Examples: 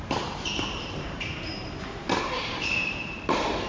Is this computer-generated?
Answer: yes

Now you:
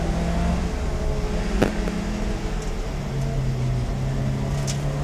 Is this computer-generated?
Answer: no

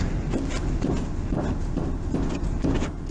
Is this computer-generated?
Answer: no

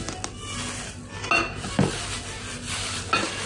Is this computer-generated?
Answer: no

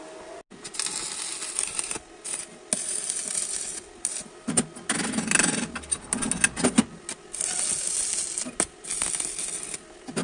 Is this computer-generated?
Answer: no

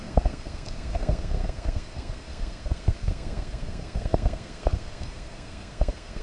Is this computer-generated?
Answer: yes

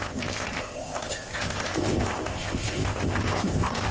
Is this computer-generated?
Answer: yes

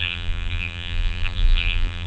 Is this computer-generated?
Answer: yes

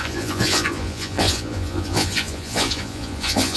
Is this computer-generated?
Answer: yes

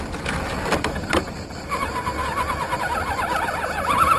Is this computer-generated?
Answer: no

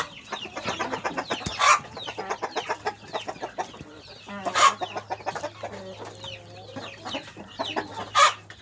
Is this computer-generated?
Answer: no